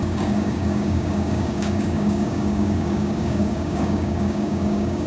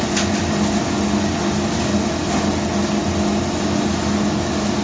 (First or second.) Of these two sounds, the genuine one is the second